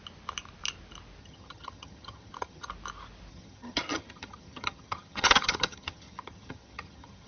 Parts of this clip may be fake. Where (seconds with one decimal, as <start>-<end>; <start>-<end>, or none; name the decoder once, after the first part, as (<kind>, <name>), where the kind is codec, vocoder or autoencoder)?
1.2-2.7 (vocoder, HiFi-GAN); 3.3-7.3